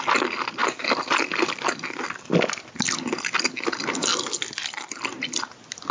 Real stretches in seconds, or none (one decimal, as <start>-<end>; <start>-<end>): 0.0-5.9